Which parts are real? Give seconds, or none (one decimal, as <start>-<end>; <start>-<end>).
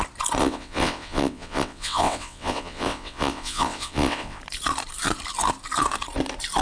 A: 0.0-0.4; 4.4-6.6